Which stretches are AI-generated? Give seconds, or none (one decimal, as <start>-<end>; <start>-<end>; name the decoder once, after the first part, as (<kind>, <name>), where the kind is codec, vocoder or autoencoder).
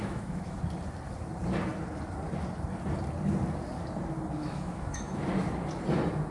0.0-0.6 (autoencoder, DAC-VAE); 4.4-5.2